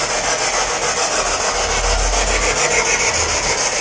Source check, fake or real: real